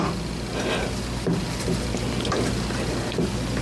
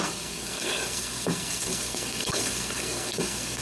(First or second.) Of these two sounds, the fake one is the second